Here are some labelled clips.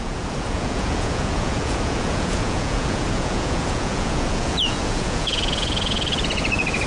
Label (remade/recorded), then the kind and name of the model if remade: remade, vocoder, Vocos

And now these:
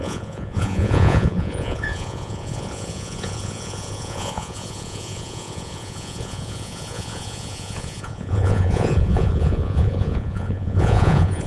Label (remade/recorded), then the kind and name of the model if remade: remade, vocoder, Vocos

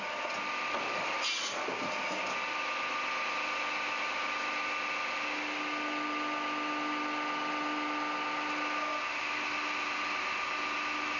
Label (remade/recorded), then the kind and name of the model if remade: recorded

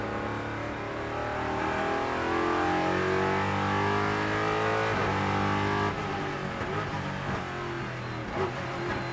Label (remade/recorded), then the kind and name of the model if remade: recorded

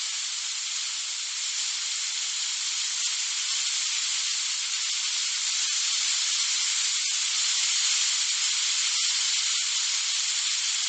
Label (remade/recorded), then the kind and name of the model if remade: recorded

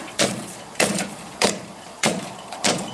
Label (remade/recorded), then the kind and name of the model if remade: remade, vocoder, Vocos